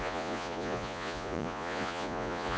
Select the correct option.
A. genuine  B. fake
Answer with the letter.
B